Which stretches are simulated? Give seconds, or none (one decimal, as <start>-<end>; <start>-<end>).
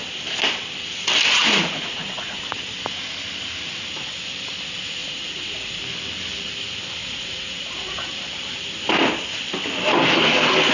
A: 1.4-2.4; 5.0-5.8; 7.0-8.1